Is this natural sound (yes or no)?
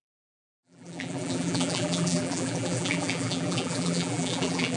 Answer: no